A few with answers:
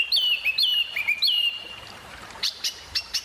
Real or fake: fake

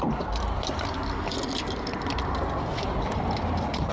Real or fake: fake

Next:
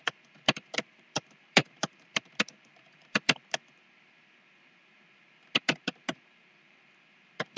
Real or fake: fake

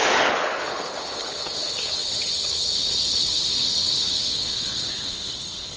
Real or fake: fake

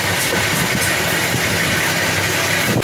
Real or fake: real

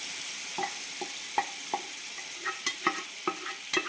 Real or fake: real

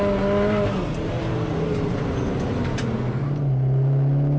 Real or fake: real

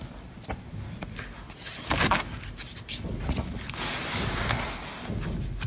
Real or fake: real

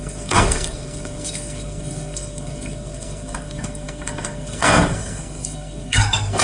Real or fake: fake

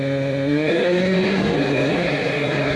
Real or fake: fake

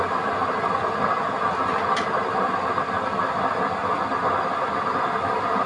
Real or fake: real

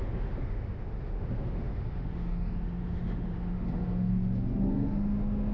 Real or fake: fake